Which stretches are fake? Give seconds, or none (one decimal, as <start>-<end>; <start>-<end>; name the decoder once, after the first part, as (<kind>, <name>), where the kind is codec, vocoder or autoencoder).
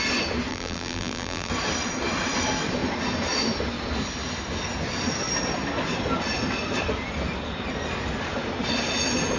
0.5-1.5 (vocoder, BigVGAN v2)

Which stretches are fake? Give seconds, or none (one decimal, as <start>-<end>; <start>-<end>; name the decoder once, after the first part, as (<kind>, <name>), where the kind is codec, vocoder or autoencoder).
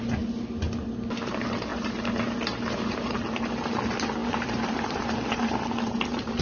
1.7-3.7 (vocoder, BigVGAN v2); 4.2-6.4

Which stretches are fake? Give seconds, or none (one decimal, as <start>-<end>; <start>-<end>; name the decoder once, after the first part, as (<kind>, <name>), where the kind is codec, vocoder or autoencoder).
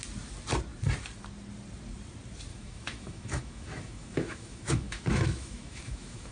2.5-6.3 (autoencoder, DAC-VAE)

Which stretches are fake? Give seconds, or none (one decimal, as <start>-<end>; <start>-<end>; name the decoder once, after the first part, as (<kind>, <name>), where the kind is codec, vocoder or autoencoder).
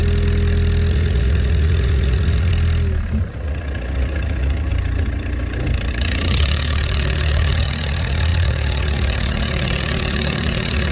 0.9-2.5 (vocoder, Vocos); 3.2-4.7; 5.9-10.9